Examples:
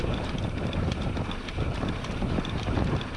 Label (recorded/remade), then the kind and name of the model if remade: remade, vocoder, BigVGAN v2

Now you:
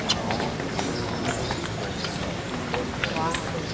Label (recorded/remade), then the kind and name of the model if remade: recorded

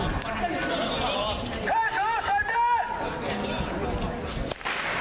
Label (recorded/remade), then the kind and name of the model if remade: recorded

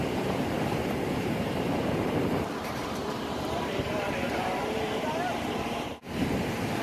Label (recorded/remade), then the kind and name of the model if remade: remade, vocoder, BigVGAN v2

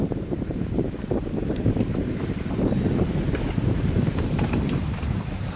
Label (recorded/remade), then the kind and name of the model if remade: remade, vocoder, BigVGAN v2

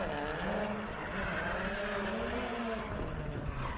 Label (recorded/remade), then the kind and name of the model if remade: recorded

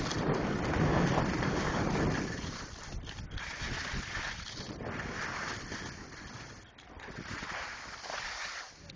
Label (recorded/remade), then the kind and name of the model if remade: recorded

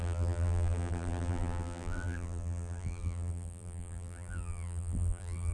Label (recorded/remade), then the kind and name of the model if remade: remade, vocoder, BigVGAN v2